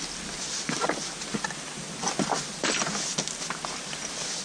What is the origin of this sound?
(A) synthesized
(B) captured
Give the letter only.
B